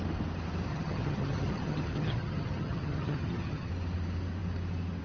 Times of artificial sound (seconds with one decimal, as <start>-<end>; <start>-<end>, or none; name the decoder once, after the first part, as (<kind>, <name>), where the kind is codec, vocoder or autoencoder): 0.7-3.7 (vocoder, HiFi-GAN)